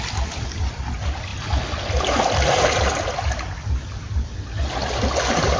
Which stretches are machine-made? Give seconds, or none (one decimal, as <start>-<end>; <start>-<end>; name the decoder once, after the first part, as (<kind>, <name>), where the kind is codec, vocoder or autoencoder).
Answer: none